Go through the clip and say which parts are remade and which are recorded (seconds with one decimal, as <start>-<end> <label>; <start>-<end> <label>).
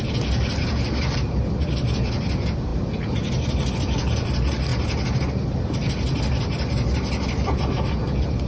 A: 0.0-8.5 recorded